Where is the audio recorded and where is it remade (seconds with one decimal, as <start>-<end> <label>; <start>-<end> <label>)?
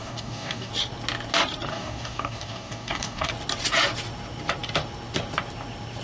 0.0-0.7 remade; 0.7-1.7 recorded; 1.7-3.3 remade; 3.3-6.0 recorded